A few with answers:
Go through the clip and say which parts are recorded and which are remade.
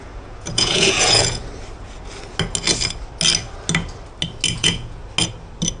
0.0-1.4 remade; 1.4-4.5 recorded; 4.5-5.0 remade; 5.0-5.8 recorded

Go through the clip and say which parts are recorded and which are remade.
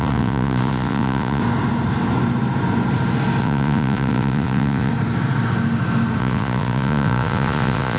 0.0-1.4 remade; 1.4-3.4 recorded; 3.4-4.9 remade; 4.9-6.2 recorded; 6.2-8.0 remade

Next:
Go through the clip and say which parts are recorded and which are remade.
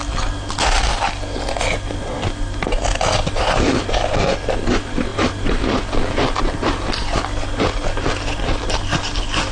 0.0-9.5 recorded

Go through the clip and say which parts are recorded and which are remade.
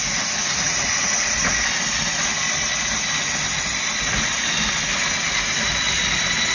0.0-0.4 recorded; 0.4-1.5 remade; 1.5-6.5 recorded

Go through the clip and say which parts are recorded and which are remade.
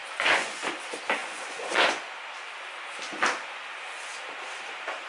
0.0-0.6 remade; 0.6-1.2 recorded; 1.2-2.1 remade; 2.1-5.1 recorded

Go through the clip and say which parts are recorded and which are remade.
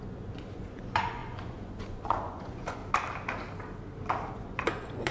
0.0-2.8 remade; 2.8-4.3 recorded; 4.3-5.1 remade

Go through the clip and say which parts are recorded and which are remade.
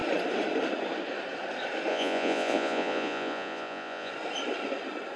0.0-1.9 recorded; 1.9-4.1 remade; 4.1-5.2 recorded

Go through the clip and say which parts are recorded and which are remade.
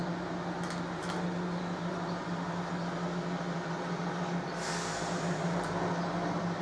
0.0-6.6 recorded